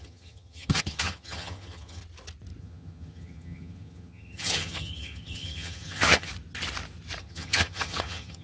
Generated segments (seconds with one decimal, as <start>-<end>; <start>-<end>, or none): 0.0-2.0; 2.6-6.3; 7.2-8.4